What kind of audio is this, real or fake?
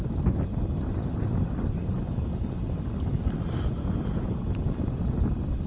real